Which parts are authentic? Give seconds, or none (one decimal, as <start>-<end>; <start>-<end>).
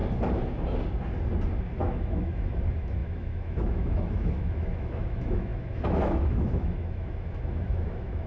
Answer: 0.0-1.8